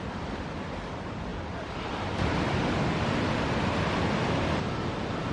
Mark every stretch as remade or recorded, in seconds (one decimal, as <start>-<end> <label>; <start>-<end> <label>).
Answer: 0.0-5.3 recorded